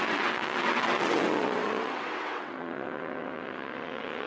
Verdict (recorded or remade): remade